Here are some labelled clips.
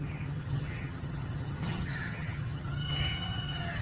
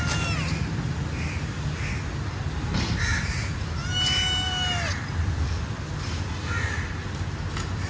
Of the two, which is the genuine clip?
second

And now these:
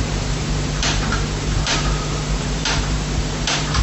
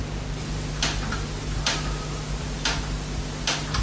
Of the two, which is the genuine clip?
second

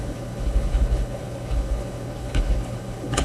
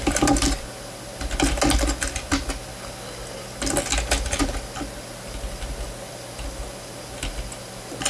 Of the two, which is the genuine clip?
second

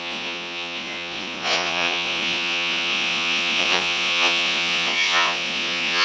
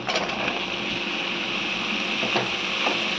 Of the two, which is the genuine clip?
second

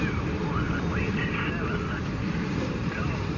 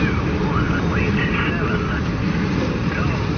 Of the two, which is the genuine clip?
second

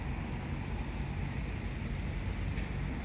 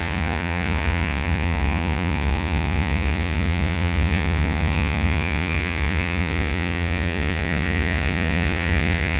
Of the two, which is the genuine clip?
first